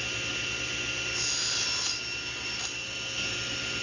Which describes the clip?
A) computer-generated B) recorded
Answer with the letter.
B